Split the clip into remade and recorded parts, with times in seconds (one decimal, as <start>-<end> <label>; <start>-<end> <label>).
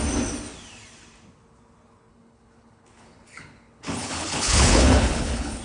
0.0-2.1 recorded; 2.1-5.6 remade